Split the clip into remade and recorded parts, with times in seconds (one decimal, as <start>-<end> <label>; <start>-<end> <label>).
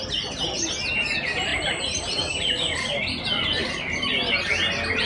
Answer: 0.0-5.1 recorded